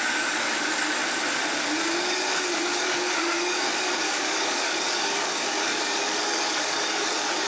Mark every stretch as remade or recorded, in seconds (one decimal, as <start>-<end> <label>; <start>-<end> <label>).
0.0-1.0 remade; 1.0-2.0 recorded; 2.0-7.5 remade